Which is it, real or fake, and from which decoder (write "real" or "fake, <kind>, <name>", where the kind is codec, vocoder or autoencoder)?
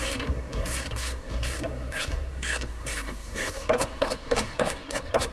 fake, codec, SNAC